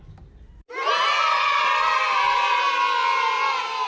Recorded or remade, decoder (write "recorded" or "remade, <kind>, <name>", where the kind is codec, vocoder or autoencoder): recorded